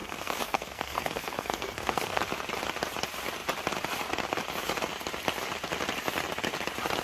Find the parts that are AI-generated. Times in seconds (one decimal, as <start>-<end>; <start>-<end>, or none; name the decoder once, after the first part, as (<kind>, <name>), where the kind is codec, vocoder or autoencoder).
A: 0.0-2.2 (codec, SNAC)